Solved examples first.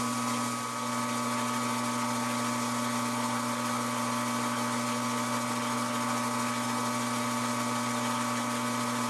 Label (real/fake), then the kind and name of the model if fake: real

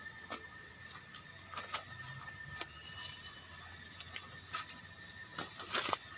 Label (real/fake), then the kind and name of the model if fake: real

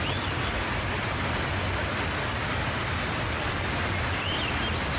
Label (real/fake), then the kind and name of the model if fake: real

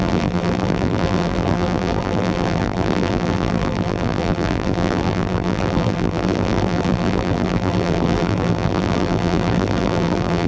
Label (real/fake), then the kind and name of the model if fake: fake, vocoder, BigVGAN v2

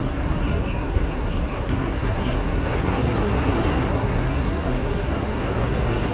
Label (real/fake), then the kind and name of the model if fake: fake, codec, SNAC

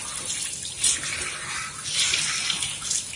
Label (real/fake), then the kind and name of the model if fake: real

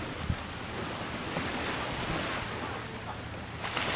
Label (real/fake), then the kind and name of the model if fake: real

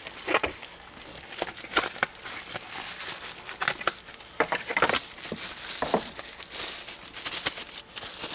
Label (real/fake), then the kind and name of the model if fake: real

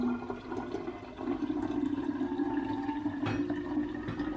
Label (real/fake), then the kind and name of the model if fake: real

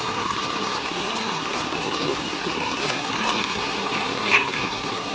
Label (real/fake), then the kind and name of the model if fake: fake, codec, SNAC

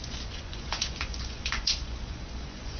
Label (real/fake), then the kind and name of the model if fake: fake, vocoder, Vocos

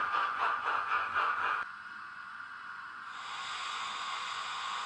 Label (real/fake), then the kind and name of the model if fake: fake, vocoder, Vocos